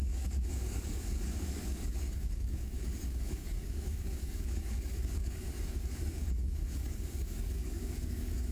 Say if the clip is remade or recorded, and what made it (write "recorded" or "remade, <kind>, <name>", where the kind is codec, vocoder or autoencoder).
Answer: remade, codec, DAC